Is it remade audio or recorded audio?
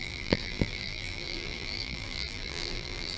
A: remade